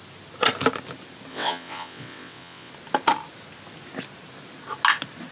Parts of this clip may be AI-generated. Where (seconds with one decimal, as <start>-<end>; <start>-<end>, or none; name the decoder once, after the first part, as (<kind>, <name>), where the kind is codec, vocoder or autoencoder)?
1.3-2.7 (vocoder, WaveNeXt)